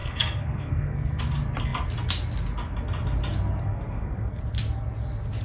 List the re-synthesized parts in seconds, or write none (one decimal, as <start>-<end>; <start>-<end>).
0.0-1.2; 3.6-4.4